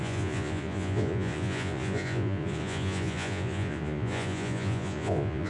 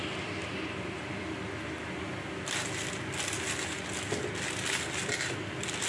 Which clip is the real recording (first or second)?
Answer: second